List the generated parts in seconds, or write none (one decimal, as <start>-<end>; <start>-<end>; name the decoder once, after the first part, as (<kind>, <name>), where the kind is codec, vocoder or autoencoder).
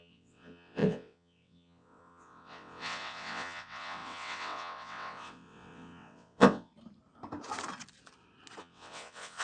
0.0-6.7 (vocoder, WaveNeXt); 8.6-9.4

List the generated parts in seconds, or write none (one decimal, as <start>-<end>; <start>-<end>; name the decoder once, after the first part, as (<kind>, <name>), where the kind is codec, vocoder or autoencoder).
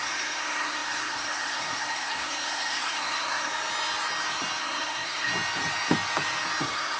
0.0-3.5 (codec, SNAC); 4.6-5.3; 6.6-7.0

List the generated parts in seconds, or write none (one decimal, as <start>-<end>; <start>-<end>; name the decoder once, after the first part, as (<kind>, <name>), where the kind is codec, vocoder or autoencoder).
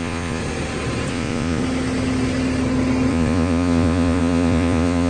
0.0-0.4 (vocoder, Vocos); 1.1-1.6; 3.1-5.1